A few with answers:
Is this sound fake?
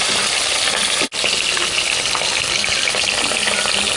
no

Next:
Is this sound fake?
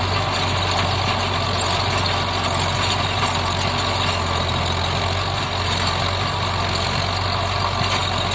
no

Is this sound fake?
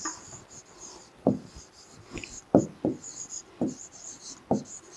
no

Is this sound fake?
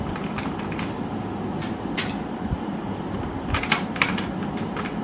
no